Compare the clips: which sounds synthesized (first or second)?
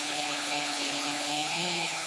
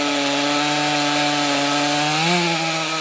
first